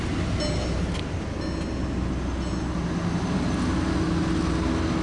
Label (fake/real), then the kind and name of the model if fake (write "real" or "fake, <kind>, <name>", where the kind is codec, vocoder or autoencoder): real